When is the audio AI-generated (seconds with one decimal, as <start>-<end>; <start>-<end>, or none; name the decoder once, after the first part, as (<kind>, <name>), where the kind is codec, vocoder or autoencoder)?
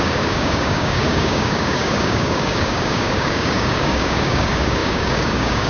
0.0-5.7 (codec, DAC)